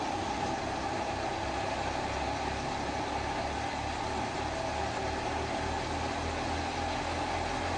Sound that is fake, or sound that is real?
real